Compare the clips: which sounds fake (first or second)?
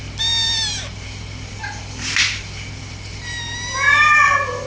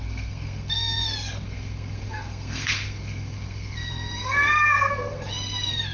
second